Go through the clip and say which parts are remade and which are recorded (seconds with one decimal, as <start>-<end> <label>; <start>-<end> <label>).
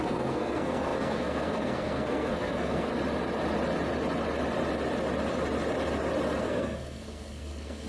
0.0-2.9 remade; 2.9-6.4 recorded; 6.4-7.9 remade